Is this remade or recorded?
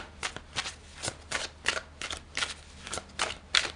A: recorded